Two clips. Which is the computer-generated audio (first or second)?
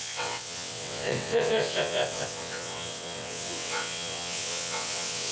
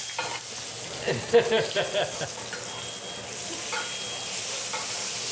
first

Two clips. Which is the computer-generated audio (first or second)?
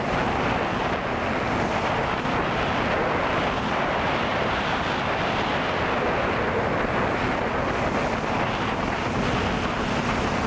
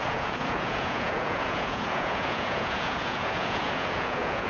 second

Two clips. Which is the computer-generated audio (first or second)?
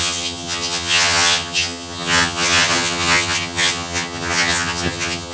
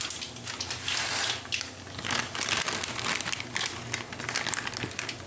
first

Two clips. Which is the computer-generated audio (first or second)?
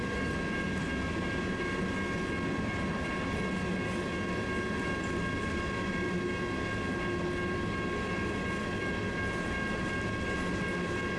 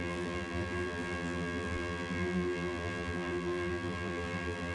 second